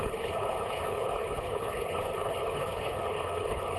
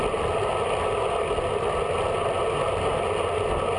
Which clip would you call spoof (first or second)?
first